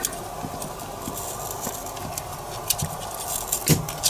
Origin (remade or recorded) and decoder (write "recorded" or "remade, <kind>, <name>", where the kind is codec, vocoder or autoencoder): recorded